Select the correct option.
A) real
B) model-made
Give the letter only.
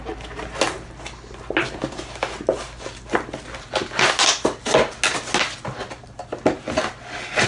A